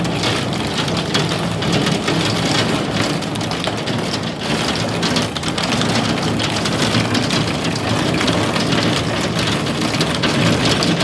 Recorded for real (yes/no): yes